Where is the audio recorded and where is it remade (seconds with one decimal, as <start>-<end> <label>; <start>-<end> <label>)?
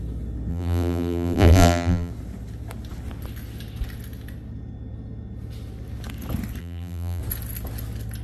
0.0-0.5 recorded; 0.5-2.1 remade; 2.1-6.6 recorded; 6.6-7.2 remade; 7.2-8.2 recorded